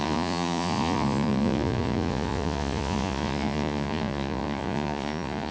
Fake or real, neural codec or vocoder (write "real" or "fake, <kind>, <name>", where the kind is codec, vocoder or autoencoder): fake, vocoder, Vocos